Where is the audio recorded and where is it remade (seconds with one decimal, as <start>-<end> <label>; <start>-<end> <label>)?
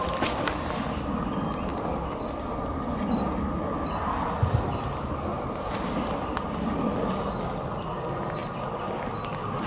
0.0-9.7 recorded